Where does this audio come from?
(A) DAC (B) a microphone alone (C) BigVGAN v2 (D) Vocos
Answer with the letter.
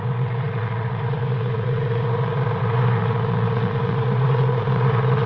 D